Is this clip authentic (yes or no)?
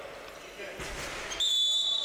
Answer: yes